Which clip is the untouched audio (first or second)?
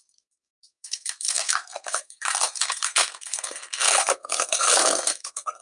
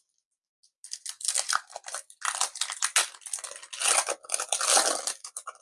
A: second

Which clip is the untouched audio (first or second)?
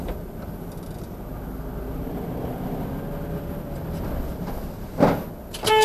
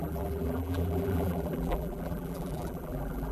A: first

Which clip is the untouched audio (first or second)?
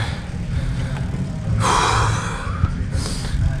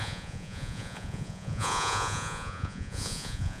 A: first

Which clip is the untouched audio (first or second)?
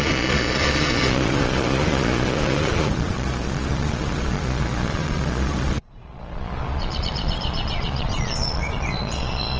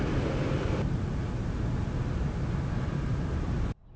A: second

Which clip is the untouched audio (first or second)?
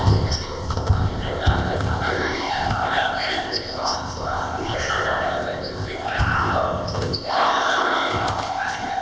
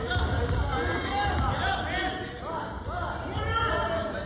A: second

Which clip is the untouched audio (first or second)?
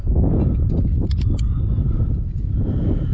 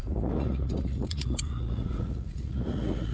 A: first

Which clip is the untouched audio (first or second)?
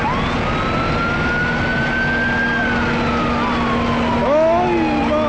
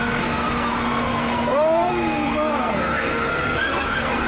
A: first